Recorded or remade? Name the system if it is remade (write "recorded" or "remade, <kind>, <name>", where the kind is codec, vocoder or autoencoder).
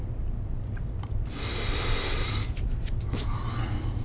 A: recorded